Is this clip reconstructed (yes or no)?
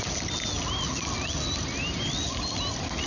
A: no